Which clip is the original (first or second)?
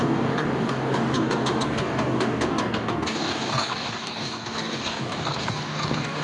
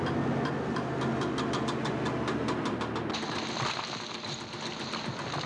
second